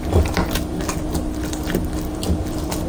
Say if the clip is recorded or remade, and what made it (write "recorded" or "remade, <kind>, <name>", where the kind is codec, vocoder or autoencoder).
recorded